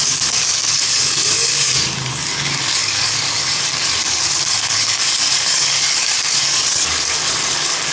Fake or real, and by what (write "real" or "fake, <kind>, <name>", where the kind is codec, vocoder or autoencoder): fake, codec, DAC